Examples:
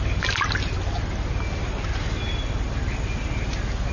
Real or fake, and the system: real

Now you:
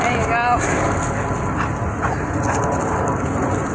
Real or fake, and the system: real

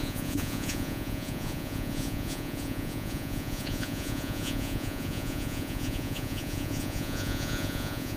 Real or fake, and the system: fake, vocoder, Vocos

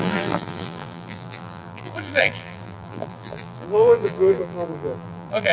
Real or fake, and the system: fake, vocoder, BigVGAN v2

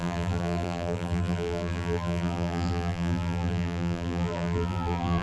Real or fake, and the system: fake, vocoder, BigVGAN v2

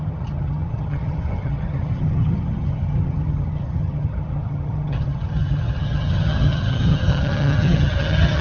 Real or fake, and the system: fake, vocoder, HiFi-GAN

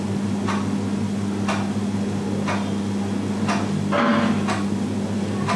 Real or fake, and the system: real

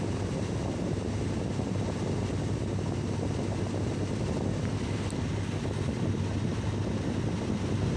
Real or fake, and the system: real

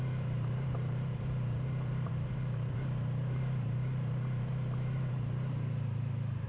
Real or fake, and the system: fake, vocoder, BigVGAN v2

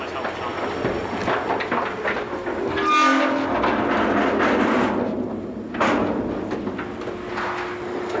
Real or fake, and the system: real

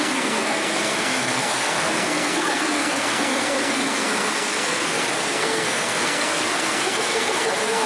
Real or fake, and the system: fake, codec, SNAC